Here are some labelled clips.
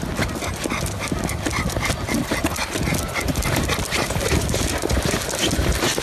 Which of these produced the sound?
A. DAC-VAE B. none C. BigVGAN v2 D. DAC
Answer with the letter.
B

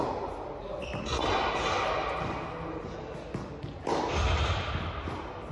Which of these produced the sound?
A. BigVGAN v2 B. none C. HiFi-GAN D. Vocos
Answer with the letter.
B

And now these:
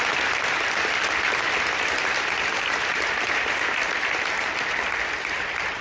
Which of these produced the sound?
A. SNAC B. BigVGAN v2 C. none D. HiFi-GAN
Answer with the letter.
B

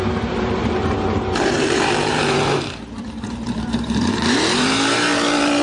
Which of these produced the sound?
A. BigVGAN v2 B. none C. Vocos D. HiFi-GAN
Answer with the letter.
A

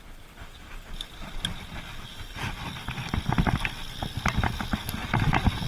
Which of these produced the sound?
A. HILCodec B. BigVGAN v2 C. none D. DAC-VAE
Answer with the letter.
C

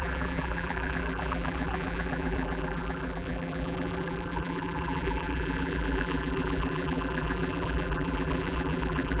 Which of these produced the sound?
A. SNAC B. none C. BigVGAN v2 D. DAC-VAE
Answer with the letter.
C